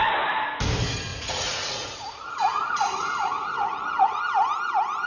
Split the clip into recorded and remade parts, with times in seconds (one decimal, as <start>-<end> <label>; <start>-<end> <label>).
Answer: 0.0-1.1 recorded; 1.1-4.2 remade; 4.2-5.1 recorded